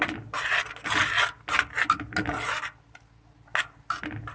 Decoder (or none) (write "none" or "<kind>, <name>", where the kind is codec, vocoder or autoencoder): none